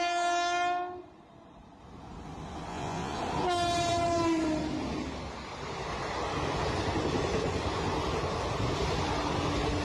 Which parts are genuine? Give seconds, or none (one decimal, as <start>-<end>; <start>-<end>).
0.0-2.7; 3.2-9.8